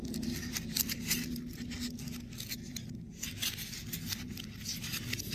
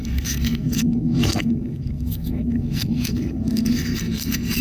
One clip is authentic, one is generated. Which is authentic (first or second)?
first